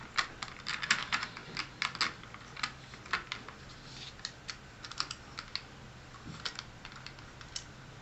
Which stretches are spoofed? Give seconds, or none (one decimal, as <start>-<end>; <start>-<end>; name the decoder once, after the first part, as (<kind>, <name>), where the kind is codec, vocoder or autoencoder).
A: none